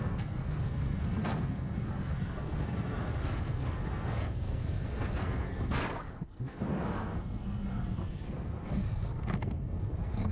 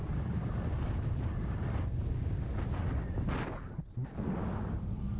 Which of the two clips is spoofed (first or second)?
first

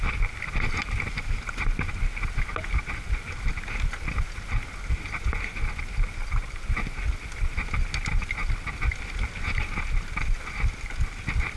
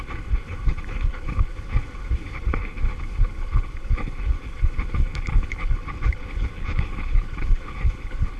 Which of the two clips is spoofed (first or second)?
second